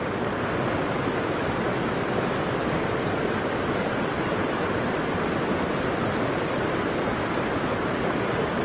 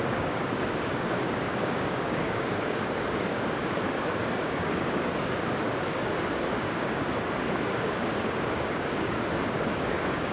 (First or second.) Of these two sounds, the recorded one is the first